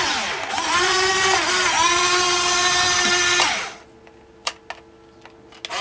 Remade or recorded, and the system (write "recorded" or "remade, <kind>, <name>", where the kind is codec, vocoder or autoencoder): recorded